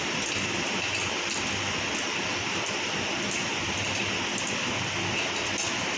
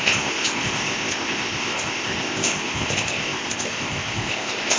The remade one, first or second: second